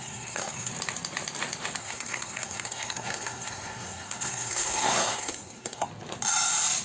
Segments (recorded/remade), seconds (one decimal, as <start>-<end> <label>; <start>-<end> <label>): 0.0-0.7 remade; 0.7-1.8 recorded; 1.8-5.9 remade; 5.9-6.8 recorded